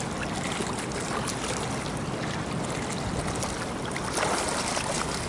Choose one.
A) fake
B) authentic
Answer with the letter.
B